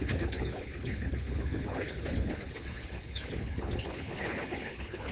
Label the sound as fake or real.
fake